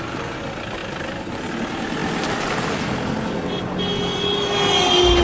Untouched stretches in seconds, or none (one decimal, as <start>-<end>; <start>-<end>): 0.0-5.2